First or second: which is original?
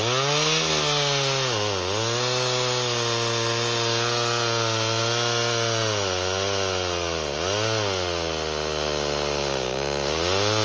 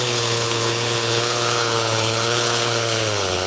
first